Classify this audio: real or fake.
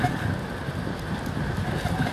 real